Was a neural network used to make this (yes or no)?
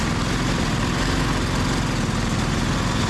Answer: no